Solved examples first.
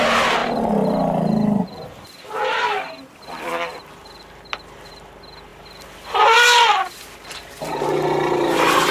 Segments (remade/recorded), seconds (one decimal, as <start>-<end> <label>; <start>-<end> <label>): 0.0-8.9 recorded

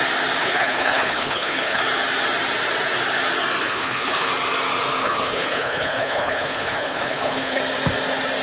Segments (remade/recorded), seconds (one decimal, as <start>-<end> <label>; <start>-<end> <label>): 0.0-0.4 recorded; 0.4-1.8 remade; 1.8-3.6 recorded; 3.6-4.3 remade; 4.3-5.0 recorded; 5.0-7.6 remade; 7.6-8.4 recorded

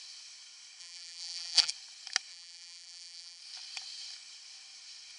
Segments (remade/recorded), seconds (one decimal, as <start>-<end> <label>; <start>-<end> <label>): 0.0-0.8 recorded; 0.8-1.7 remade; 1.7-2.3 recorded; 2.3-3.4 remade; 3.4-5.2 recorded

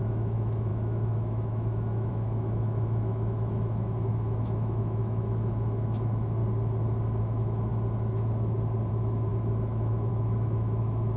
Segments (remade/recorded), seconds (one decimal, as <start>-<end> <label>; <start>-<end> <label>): 0.0-6.4 remade; 6.4-7.2 recorded; 7.2-7.7 remade; 7.7-8.9 recorded; 8.9-11.2 remade

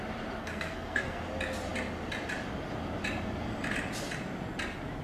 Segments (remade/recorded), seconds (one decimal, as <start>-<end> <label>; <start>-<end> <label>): 0.0-0.4 recorded; 0.4-1.2 remade; 1.2-5.0 recorded

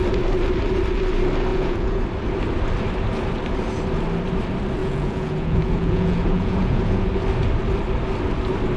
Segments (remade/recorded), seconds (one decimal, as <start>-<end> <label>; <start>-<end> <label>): 0.0-1.5 recorded; 1.5-2.0 remade; 2.0-4.8 recorded; 4.8-7.1 remade; 7.1-8.8 recorded

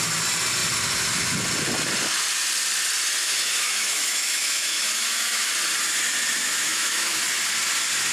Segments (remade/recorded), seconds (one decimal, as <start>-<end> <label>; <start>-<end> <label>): 0.0-3.2 recorded; 3.2-5.5 remade; 5.5-6.4 recorded; 6.4-7.2 remade; 7.2-8.1 recorded

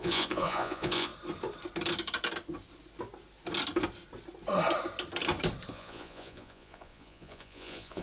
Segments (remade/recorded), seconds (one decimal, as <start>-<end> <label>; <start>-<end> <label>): 0.0-1.1 remade; 1.1-5.7 recorded; 5.7-8.0 remade